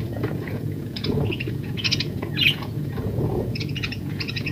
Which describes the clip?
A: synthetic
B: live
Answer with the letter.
A